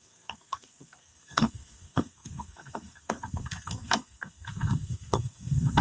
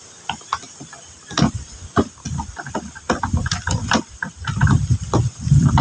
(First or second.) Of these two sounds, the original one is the second